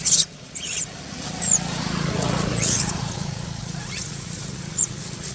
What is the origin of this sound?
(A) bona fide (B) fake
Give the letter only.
B